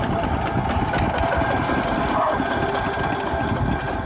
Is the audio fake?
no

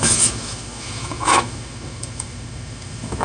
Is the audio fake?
yes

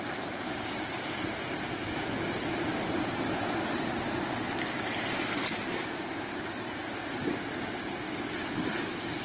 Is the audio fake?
no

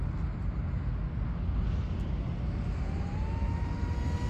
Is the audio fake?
no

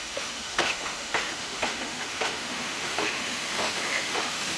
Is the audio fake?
yes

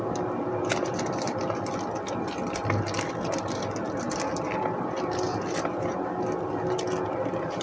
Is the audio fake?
no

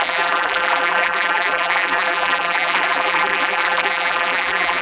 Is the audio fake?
yes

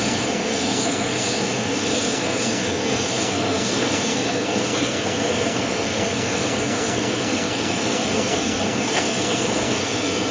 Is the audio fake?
yes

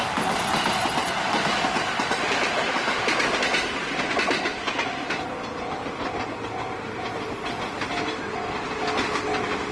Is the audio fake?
no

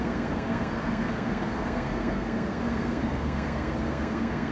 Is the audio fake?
yes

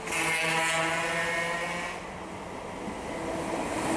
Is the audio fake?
no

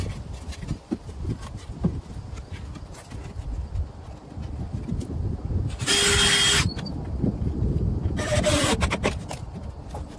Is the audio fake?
no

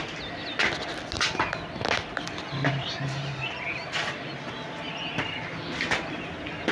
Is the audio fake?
no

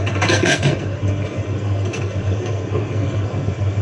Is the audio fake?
yes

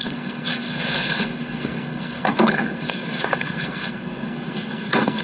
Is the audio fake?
yes